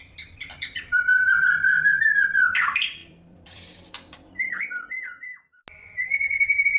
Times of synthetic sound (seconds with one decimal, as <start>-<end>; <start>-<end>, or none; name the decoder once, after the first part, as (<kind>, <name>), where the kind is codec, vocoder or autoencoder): 0.0-5.0 (vocoder, BigVGAN v2); 6.3-6.8